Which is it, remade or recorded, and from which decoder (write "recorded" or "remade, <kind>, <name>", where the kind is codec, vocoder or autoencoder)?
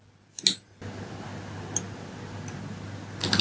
recorded